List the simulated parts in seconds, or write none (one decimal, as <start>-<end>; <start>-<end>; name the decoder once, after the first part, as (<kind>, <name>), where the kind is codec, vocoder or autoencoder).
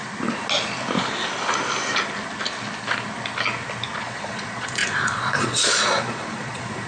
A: 4.0-6.9 (vocoder, Vocos)